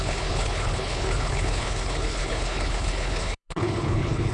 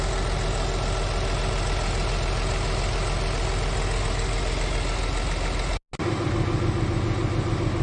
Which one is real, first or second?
second